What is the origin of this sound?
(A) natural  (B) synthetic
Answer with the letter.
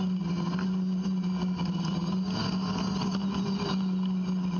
A